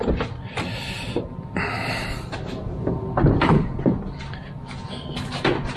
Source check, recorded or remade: recorded